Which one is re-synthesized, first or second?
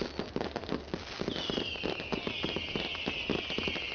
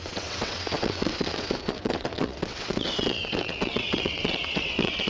second